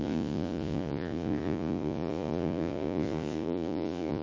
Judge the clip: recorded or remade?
remade